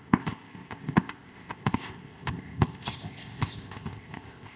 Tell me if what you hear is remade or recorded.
remade